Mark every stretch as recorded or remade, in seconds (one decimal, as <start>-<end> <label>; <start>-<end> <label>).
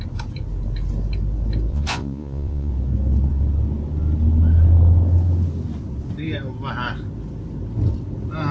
0.0-1.7 recorded; 1.7-2.7 remade; 2.7-8.5 recorded